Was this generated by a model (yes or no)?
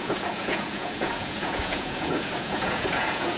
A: yes